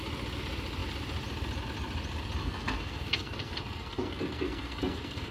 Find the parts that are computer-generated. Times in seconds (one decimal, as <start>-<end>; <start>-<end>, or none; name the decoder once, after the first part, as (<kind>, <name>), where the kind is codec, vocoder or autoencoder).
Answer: 2.4-5.3 (codec, SNAC)